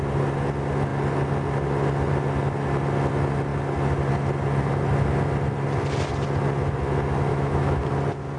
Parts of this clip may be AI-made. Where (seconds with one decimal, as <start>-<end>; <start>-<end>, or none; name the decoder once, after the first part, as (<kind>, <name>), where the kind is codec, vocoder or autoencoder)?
7.3-7.8 (autoencoder, DAC-VAE)